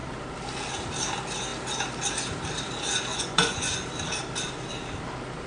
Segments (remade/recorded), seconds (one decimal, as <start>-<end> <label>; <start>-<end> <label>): 0.0-3.1 recorded; 3.1-3.7 remade; 3.7-5.5 recorded